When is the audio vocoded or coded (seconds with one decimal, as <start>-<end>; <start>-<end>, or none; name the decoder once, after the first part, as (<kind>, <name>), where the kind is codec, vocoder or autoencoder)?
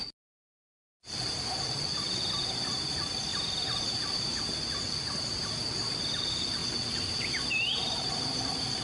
3.3-4.4 (vocoder, BigVGAN v2); 6.6-8.1